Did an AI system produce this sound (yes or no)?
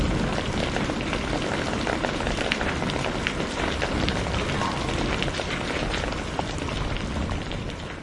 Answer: yes